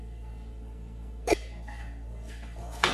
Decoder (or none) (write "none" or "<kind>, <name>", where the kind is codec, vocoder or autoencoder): codec, SNAC